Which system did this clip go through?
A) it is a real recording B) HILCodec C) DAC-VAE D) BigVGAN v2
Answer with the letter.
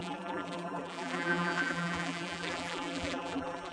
D